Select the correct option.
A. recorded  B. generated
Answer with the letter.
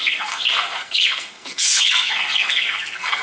B